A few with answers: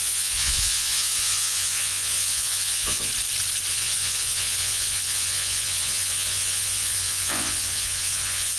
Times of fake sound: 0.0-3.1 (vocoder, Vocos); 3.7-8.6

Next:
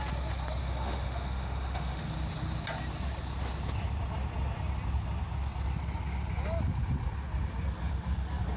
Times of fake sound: 0.6-2.0 (autoencoder, DAC-VAE)

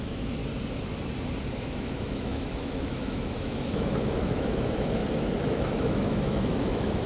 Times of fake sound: 0.0-0.4 (autoencoder, DAC-VAE); 1.6-5.0; 5.5-7.1

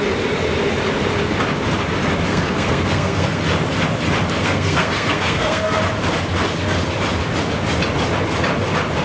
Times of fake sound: 2.3-3.4 (codec, SNAC); 4.4-5.8

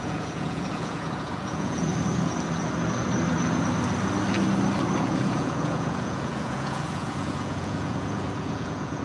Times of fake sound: 0.0-1.9 (vocoder, Vocos); 5.0-9.0

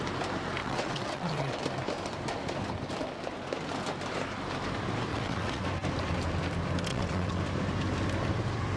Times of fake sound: 0.6-1.6 (vocoder, WaveNeXt); 5.1-5.6; 6.9-7.4